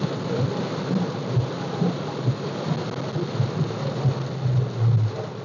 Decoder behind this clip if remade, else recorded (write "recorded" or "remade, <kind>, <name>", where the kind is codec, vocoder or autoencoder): recorded